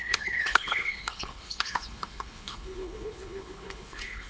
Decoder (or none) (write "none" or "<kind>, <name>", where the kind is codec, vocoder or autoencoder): codec, HILCodec